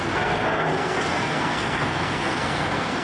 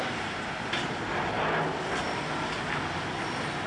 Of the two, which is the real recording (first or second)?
second